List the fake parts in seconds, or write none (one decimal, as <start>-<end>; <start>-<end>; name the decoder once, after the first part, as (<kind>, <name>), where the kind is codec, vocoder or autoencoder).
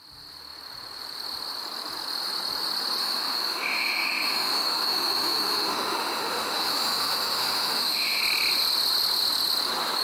3.0-8.2 (autoencoder, DAC-VAE)